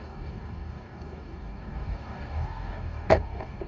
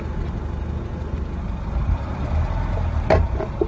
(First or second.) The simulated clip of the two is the first